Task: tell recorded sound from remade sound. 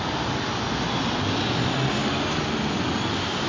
recorded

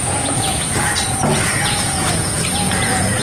remade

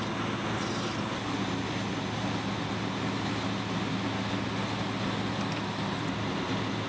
recorded